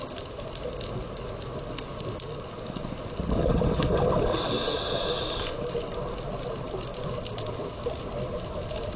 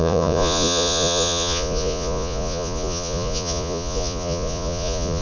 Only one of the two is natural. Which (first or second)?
first